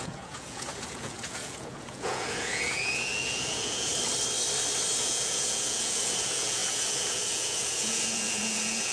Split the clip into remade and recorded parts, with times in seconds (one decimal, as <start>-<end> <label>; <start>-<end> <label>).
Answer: 0.0-3.9 remade; 3.9-5.0 recorded; 5.0-8.9 remade